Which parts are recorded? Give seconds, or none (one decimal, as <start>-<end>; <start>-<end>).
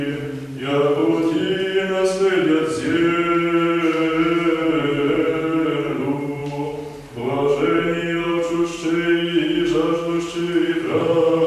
1.0-4.7; 8.7-10.7